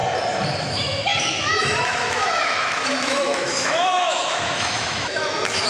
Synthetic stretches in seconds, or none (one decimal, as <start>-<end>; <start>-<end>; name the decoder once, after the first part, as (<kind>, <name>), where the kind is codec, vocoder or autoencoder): 0.6-5.7 (autoencoder, DAC-VAE)